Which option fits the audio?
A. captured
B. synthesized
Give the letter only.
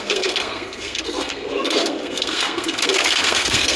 B